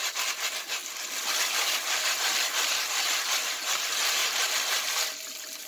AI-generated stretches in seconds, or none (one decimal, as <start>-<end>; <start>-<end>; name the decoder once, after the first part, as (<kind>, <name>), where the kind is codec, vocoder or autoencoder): 0.0-0.8 (vocoder, BigVGAN v2); 1.5-5.7